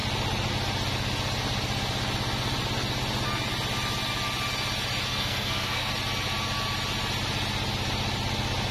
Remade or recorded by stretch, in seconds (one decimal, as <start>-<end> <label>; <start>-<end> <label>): 0.0-5.1 recorded; 5.1-5.9 remade; 5.9-8.7 recorded